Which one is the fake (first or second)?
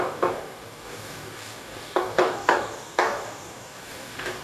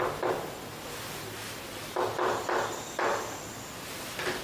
first